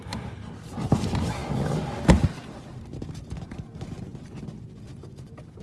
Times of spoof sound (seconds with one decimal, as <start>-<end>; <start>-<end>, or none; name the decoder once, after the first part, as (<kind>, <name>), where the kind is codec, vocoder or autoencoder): none